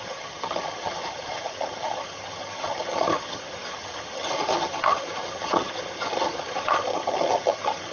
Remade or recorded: remade